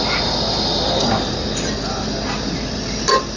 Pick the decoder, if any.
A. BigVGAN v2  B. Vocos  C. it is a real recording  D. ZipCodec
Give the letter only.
C